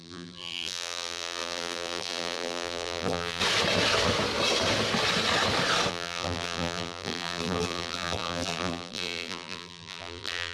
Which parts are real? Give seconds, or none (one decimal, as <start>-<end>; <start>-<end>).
3.4-5.9